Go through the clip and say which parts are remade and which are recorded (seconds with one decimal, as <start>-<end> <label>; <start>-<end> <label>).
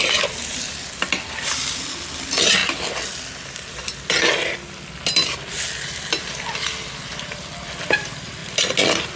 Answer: 0.0-9.2 recorded